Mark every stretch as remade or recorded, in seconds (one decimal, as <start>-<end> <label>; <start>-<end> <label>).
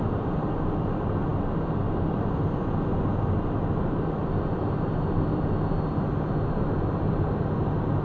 0.0-8.0 recorded